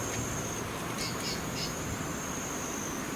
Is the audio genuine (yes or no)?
yes